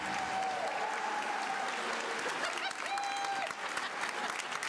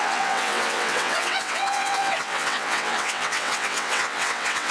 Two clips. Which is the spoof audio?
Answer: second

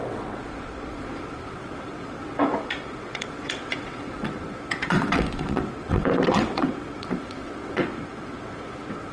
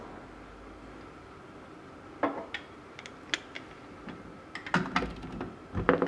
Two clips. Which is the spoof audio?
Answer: first